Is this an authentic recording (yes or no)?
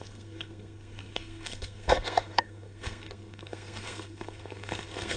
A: no